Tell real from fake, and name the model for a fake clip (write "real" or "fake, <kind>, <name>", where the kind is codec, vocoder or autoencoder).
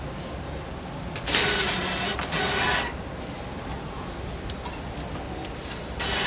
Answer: real